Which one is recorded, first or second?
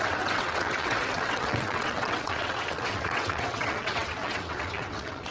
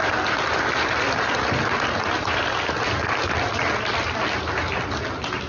second